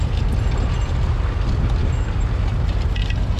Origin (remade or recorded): recorded